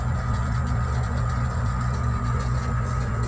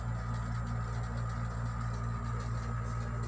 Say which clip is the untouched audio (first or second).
second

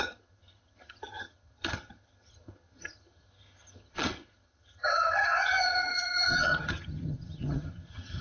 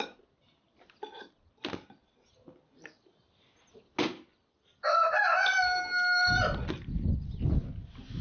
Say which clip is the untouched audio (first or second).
second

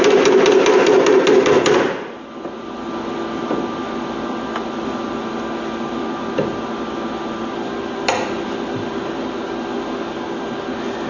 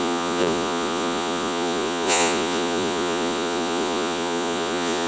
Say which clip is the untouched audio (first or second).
first